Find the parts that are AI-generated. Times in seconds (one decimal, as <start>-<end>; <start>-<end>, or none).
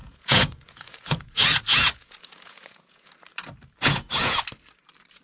0.0-3.1; 3.8-4.4